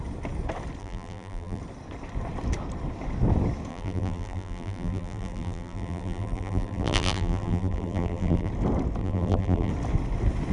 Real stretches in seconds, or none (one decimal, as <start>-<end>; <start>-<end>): 0.0-0.8; 1.6-3.7; 8.5-9.0; 9.7-10.5